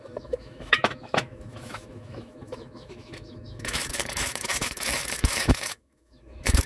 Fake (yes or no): yes